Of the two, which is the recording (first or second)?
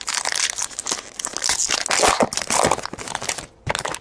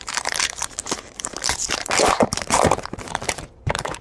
first